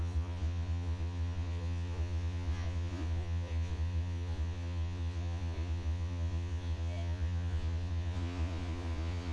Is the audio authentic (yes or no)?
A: no